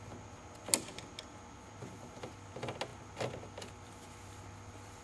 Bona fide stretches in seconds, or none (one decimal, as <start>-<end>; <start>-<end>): 0.0-5.0